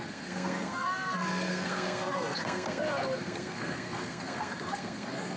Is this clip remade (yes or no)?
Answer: yes